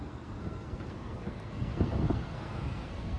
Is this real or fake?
fake